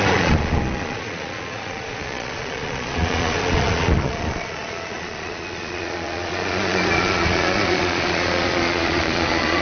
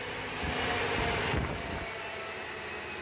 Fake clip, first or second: first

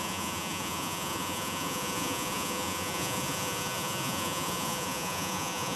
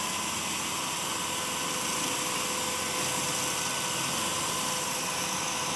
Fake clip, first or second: first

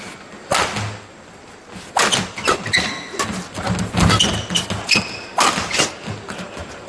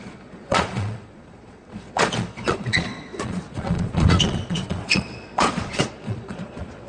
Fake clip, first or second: second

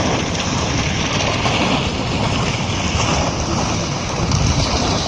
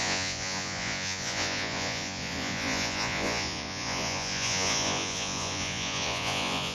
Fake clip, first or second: second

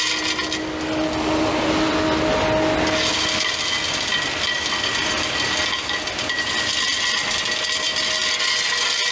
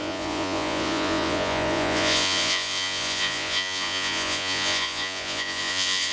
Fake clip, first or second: second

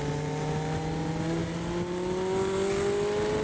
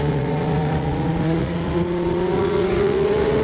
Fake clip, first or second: second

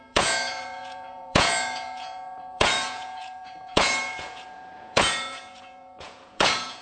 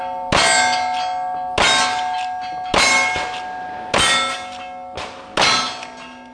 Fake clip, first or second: first